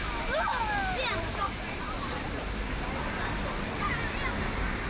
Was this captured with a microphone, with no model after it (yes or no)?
yes